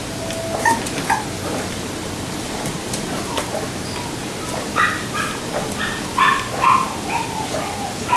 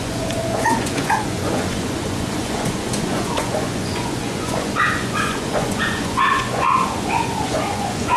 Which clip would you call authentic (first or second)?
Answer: first